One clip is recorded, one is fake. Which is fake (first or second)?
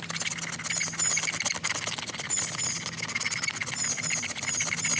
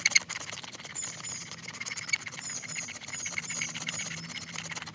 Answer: second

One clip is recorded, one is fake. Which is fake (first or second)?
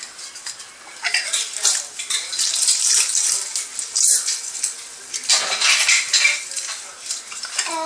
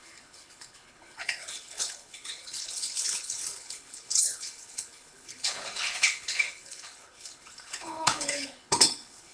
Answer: second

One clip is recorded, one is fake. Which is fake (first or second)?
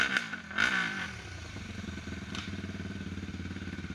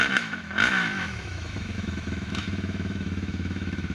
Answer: second